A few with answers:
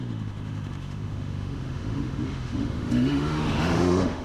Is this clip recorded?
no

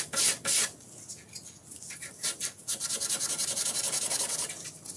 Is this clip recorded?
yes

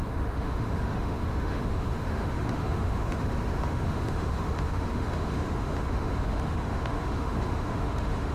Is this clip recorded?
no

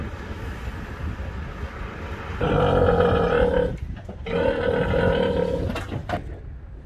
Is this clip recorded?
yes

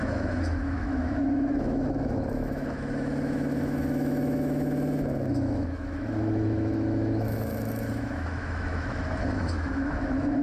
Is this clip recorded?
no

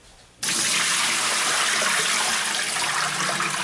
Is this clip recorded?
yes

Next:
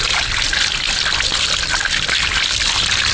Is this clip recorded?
yes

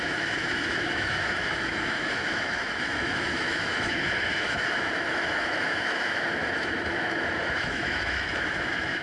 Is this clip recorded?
no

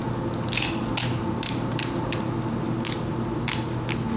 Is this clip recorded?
yes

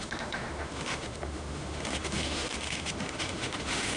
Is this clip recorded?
no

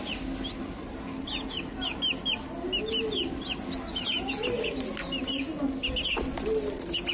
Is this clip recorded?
yes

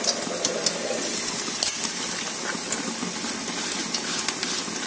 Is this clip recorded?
yes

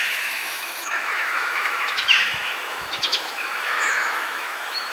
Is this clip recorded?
no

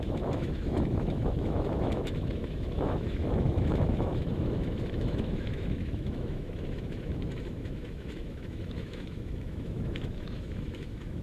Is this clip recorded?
no